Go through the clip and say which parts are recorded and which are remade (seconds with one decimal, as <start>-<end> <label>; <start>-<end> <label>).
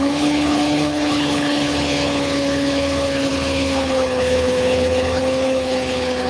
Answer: 0.0-6.3 remade